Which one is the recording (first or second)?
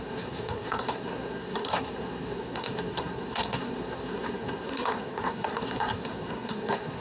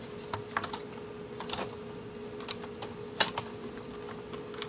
second